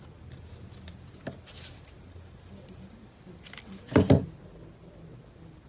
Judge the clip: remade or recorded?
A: recorded